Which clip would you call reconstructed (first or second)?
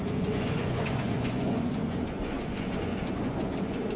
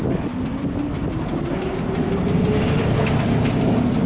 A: first